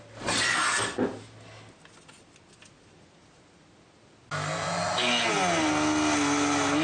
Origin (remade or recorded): recorded